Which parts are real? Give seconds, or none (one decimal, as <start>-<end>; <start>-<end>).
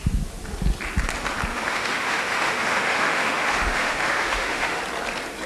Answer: 0.0-1.5; 4.8-5.5